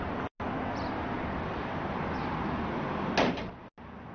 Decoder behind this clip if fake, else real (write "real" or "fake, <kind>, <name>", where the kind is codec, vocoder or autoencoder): real